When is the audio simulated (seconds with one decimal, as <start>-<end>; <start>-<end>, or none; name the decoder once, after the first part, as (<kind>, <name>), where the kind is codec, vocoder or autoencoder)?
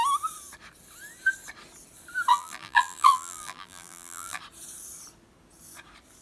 2.3-4.4 (vocoder, BigVGAN v2)